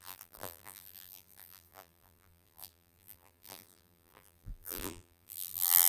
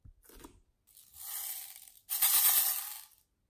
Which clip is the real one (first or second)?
second